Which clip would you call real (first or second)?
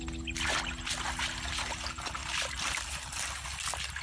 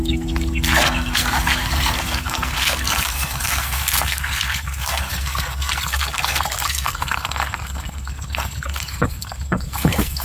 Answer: first